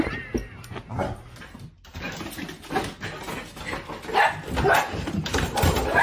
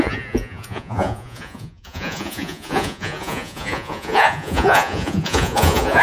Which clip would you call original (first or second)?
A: first